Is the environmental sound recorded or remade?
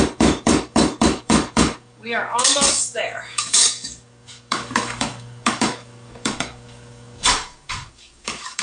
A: remade